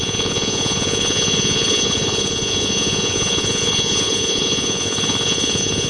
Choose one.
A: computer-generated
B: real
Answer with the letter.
A